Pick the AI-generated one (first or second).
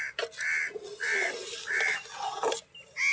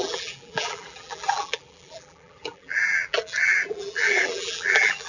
second